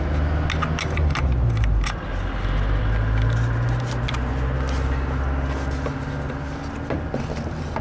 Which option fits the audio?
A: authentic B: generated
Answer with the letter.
A